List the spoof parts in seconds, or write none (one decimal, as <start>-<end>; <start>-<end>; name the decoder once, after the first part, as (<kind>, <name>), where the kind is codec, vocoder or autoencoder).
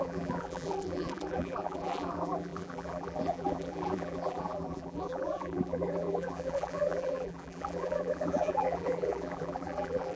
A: 0.0-10.2 (vocoder, BigVGAN v2)